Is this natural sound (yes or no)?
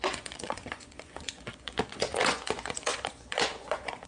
no